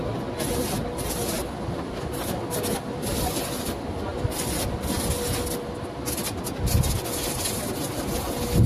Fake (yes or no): no